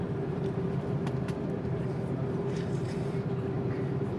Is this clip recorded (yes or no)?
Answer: no